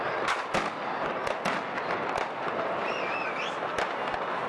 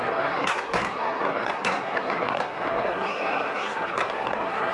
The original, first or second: first